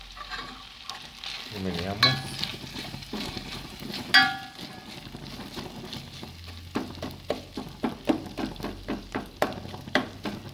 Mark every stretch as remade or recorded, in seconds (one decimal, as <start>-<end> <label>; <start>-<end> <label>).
0.0-2.5 recorded; 2.5-4.0 remade; 4.0-10.5 recorded